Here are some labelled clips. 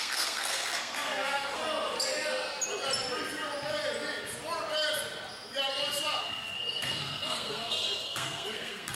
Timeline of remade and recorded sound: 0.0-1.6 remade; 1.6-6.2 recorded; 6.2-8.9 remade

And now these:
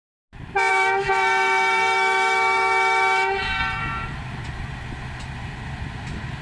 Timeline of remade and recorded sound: 0.0-0.7 recorded; 0.7-3.8 remade; 3.8-6.4 recorded

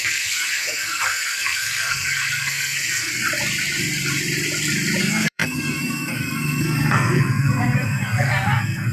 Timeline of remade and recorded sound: 0.0-3.2 remade; 3.2-5.0 recorded; 5.0-8.9 remade

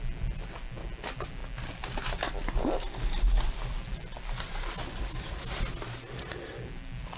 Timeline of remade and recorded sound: 0.0-7.2 recorded